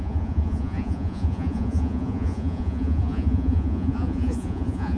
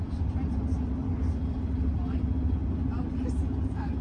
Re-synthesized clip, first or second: first